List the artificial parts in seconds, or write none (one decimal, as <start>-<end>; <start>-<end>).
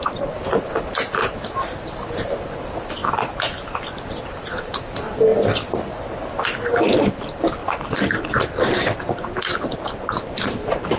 0.0-3.0; 3.9-5.3; 7.1-7.6; 9.0-11.0